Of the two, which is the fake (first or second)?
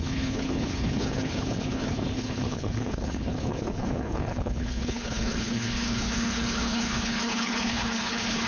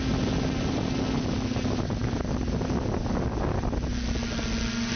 first